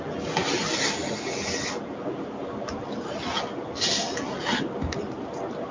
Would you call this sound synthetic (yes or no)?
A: no